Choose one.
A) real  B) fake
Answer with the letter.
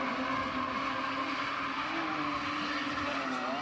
A